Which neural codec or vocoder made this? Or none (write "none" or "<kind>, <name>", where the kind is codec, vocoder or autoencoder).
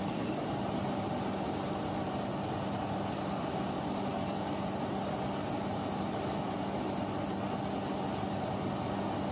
none